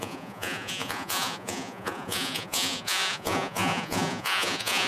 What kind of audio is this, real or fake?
fake